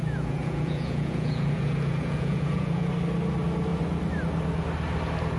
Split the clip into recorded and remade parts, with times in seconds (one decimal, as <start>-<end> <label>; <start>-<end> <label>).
0.0-2.9 remade; 2.9-5.4 recorded